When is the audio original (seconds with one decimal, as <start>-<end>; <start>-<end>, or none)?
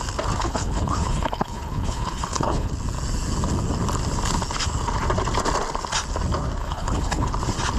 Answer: 0.0-0.4; 2.7-6.6; 7.3-7.8